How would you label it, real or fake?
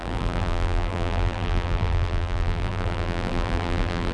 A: fake